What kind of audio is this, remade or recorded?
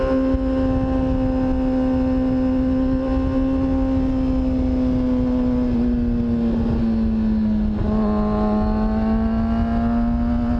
recorded